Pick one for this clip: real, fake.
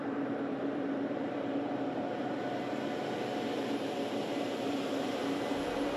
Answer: fake